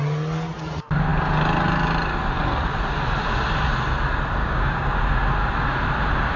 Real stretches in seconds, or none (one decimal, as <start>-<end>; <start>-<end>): 0.0-4.4; 5.0-6.4